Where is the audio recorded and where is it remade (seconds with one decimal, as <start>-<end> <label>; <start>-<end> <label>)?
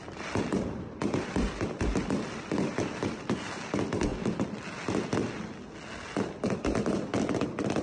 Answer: 0.0-4.1 remade; 4.1-6.2 recorded; 6.2-7.8 remade